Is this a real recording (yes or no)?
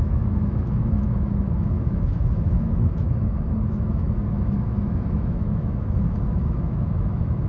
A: no